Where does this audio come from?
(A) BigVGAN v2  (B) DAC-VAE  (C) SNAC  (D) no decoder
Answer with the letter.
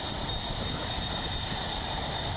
A